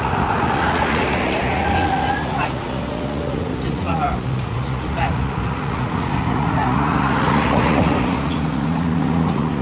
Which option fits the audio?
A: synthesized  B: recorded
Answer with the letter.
A